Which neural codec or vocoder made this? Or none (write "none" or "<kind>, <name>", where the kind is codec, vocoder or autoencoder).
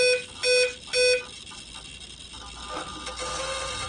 none